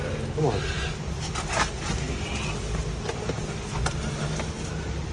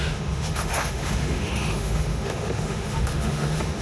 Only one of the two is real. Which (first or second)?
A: first